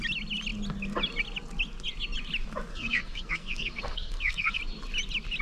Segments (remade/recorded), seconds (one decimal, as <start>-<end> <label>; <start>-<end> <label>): 0.0-2.7 recorded; 2.7-4.6 remade; 4.6-5.4 recorded